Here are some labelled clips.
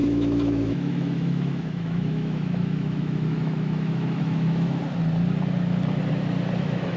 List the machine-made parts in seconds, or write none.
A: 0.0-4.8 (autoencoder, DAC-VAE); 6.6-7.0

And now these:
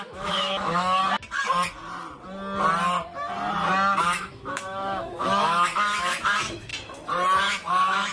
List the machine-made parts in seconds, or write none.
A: 0.0-1.0 (autoencoder, DAC-VAE); 4.0-6.7; 7.4-8.1

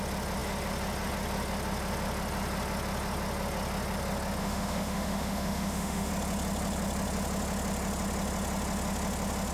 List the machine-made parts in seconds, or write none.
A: 4.4-6.1 (autoencoder, DAC-VAE)

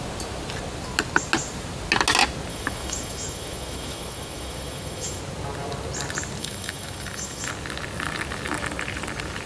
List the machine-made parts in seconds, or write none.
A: 2.5-5.2 (autoencoder, DAC-VAE); 6.4-7.5

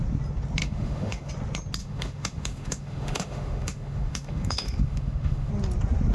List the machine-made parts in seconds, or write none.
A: 0.6-1.3 (autoencoder, DAC-VAE); 1.8-5.5

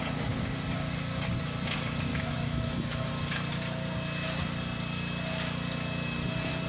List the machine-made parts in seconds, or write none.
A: 2.1-3.1 (autoencoder, DAC-VAE)

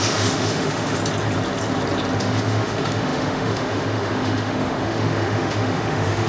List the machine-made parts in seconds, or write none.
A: 0.0-1.0 (autoencoder, DAC-VAE); 2.2-6.3